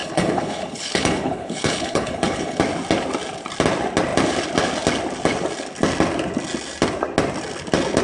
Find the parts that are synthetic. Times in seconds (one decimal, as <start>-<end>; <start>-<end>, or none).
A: 0.0-2.6